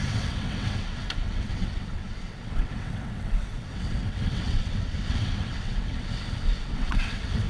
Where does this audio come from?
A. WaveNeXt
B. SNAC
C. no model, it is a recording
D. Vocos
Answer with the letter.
A